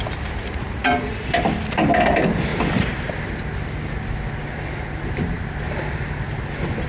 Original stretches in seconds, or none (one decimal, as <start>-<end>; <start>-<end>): 0.0-6.9